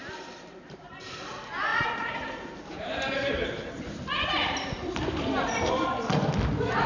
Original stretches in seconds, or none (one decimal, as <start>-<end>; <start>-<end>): 0.9-1.7; 5.7-6.9